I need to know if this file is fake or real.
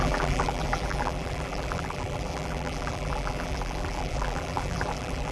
fake